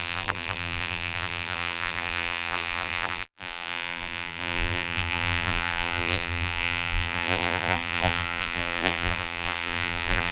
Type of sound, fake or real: fake